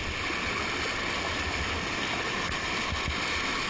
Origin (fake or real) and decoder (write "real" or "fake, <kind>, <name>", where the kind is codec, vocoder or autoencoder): real